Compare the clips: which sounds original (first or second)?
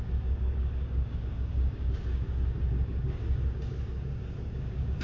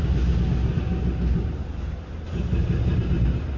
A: second